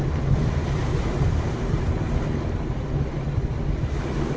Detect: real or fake real